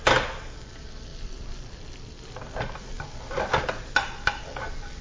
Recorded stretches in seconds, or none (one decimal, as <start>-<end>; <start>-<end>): 0.0-5.0

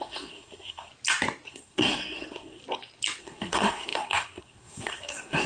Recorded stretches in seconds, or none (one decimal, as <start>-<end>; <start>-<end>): 0.9-1.5; 2.6-3.2